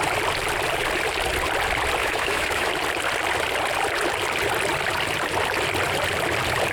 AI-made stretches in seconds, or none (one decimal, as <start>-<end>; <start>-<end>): 2.0-2.7